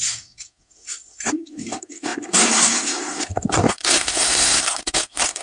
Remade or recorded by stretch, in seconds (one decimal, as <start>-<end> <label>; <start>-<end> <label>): 0.0-5.4 remade